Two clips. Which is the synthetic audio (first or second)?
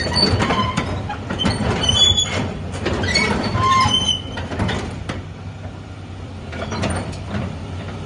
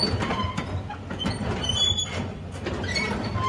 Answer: first